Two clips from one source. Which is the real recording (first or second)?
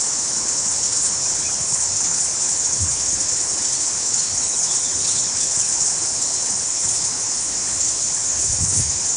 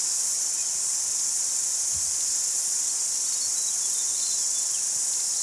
second